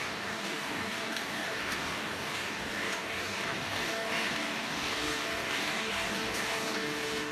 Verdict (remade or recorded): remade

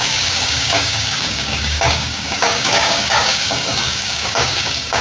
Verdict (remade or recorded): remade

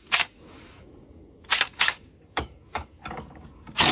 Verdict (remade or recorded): remade